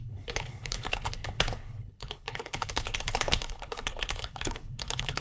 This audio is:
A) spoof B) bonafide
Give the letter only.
A